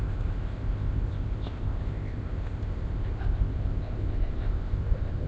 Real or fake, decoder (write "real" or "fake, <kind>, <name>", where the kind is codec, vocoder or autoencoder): fake, codec, ZipCodec